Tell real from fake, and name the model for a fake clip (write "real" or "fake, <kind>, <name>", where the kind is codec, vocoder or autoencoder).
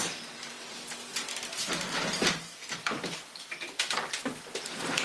real